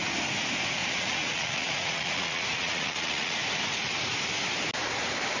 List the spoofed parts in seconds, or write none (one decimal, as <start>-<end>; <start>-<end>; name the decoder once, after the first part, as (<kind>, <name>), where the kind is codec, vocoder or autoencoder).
0.8-3.4 (vocoder, Vocos)